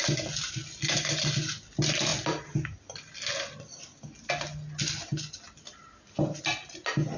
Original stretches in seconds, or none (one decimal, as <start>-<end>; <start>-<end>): 0.0-7.2